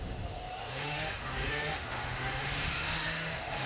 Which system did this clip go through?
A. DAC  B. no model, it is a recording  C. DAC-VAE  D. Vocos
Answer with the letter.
C